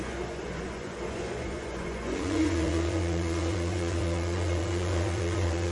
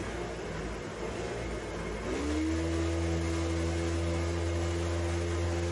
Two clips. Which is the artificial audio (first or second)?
first